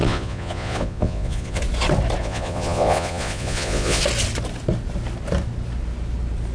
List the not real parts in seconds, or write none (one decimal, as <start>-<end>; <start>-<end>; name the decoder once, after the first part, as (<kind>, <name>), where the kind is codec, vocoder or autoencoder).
0.0-1.6 (vocoder, Vocos); 2.2-4.0